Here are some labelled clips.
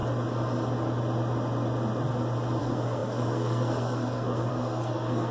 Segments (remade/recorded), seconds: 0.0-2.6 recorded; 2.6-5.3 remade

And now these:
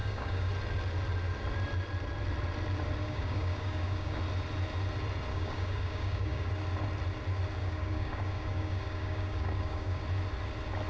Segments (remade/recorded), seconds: 0.0-0.5 remade; 0.5-3.0 recorded; 3.0-4.2 remade; 4.2-5.3 recorded; 5.3-6.5 remade; 6.5-7.6 recorded; 7.6-10.0 remade; 10.0-10.9 recorded

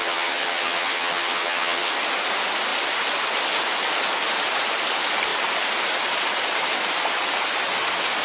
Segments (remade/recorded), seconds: 0.0-1.9 remade; 1.9-8.2 recorded